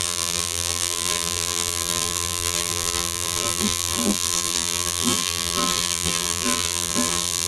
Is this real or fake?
fake